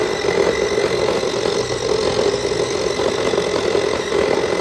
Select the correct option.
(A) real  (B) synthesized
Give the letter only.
A